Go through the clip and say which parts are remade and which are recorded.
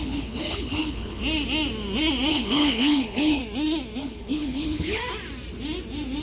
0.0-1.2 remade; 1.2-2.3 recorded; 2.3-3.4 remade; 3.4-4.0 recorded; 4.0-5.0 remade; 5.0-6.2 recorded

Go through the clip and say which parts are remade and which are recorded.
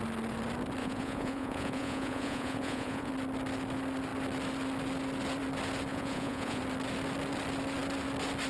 0.0-0.8 recorded; 0.8-3.1 remade; 3.1-5.9 recorded; 5.9-6.6 remade; 6.6-8.5 recorded